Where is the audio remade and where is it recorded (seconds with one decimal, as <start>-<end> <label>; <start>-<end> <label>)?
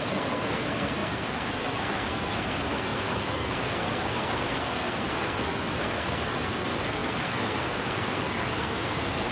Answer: 0.0-9.3 remade